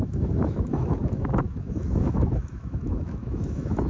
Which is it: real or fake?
fake